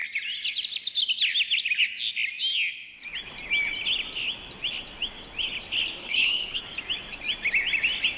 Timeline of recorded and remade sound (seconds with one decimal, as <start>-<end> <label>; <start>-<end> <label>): 0.0-6.0 recorded; 6.0-6.6 remade; 6.6-8.2 recorded